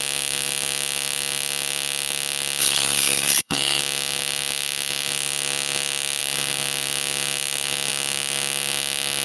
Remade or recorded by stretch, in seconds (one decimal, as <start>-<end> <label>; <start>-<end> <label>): 0.0-2.6 recorded; 2.6-3.8 remade; 3.8-9.2 recorded